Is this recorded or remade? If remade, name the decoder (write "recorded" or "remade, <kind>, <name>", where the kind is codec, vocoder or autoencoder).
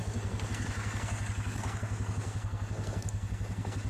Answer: remade, codec, SNAC